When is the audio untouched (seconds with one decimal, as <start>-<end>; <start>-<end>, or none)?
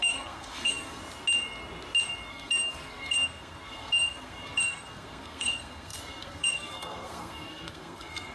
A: 1.0-2.3